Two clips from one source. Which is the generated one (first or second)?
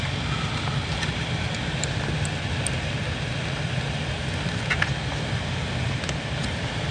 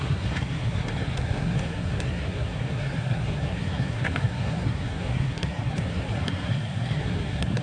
second